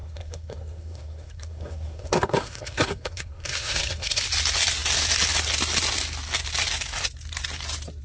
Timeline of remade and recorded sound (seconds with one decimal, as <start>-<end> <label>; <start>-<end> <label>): 0.0-4.2 remade; 4.2-8.0 recorded